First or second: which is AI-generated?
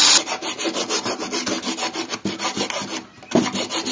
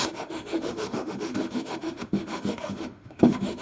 second